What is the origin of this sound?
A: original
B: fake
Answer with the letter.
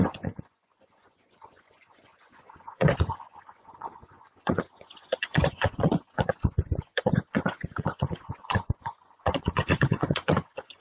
B